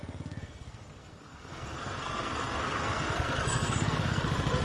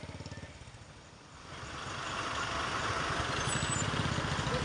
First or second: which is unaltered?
second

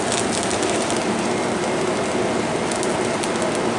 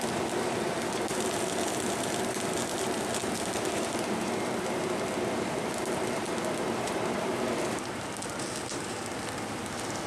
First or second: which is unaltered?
first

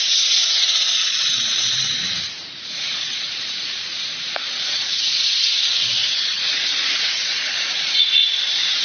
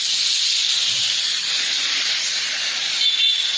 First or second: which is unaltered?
second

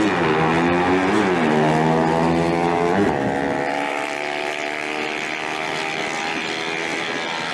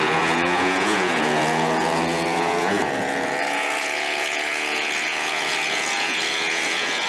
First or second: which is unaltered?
first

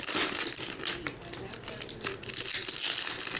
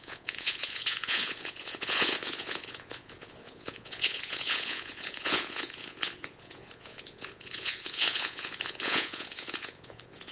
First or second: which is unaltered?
first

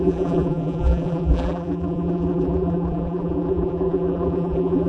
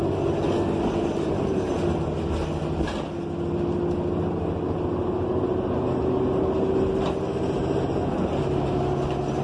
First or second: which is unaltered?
second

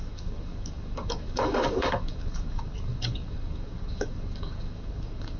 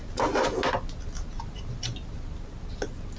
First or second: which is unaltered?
second